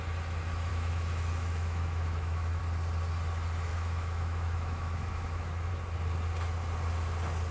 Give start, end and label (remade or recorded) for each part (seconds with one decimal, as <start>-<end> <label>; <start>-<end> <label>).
0.0-0.7 recorded; 0.7-2.6 remade; 2.6-3.7 recorded; 3.7-5.7 remade; 5.7-7.5 recorded